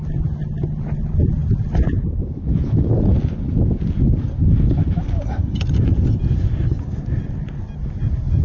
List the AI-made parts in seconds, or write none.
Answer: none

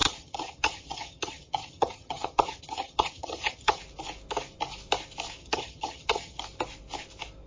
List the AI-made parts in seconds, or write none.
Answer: 0.0-3.8 (vocoder, HiFi-GAN); 5.4-6.4

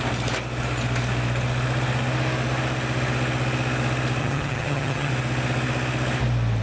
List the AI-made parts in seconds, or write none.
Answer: 4.2-5.1 (vocoder, HiFi-GAN)

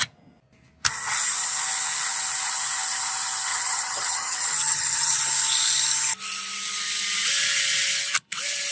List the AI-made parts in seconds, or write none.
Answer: 3.5-5.2 (vocoder, HiFi-GAN)